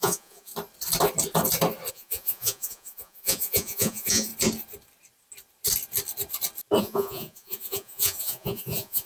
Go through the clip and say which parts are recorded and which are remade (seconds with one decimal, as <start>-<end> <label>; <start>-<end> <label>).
0.0-0.5 remade; 0.5-1.9 recorded; 1.9-4.3 remade; 4.3-6.8 recorded; 6.8-9.1 remade